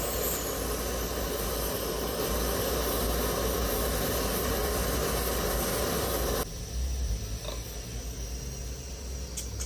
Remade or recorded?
recorded